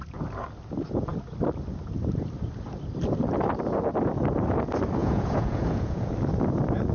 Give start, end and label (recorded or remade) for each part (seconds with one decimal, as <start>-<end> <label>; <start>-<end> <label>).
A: 0.0-5.0 recorded; 5.0-6.1 remade; 6.1-6.9 recorded